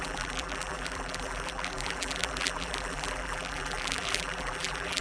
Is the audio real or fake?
fake